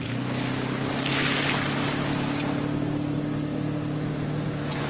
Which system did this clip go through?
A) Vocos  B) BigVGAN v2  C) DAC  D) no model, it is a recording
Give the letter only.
D